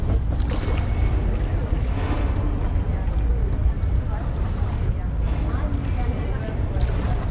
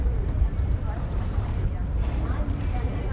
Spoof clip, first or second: second